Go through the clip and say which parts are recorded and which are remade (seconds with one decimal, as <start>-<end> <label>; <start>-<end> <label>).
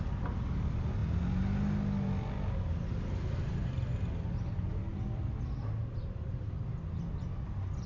0.0-7.9 recorded